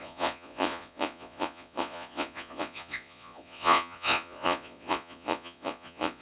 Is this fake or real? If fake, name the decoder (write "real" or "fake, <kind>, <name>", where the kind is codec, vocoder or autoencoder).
fake, vocoder, Vocos